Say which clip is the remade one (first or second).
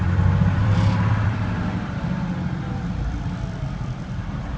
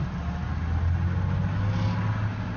first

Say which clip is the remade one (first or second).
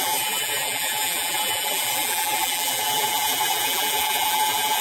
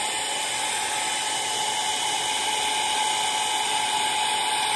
first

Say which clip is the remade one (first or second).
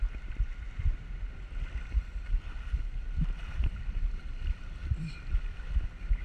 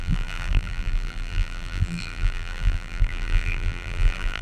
second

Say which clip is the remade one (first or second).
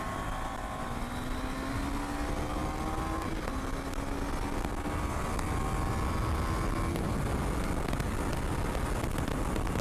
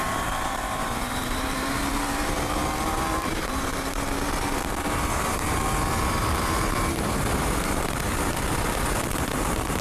second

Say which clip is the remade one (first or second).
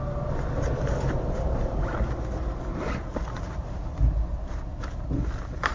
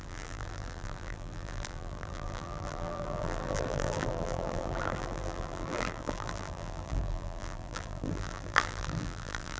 second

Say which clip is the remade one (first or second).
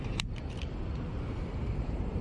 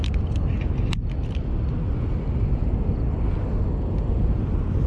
first